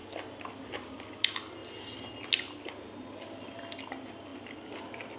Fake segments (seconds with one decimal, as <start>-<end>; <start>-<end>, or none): none